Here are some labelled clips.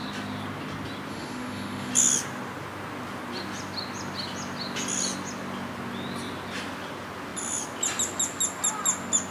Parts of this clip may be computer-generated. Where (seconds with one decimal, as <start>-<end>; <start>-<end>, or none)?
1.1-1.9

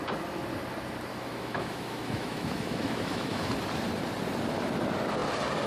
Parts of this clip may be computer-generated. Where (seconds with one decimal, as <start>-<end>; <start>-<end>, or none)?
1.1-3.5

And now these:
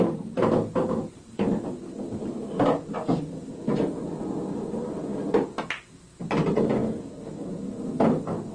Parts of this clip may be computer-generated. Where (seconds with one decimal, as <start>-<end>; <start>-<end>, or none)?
none

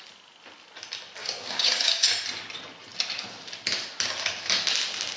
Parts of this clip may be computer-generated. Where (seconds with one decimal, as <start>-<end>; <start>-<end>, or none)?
1.2-2.1

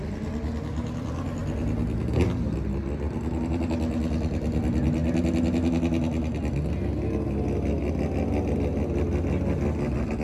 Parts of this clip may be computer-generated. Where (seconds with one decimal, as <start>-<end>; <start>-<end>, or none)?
none